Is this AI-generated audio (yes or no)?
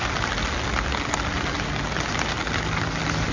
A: no